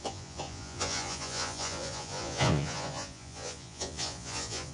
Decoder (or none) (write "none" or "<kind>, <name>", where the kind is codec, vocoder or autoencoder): vocoder, Vocos